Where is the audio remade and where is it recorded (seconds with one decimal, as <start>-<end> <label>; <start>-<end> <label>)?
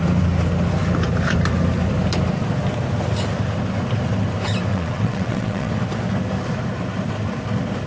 0.0-4.7 recorded; 4.7-5.7 remade; 5.7-7.9 recorded